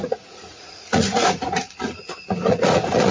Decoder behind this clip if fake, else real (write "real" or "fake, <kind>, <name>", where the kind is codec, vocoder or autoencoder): fake, vocoder, Vocos